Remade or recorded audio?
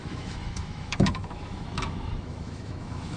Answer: remade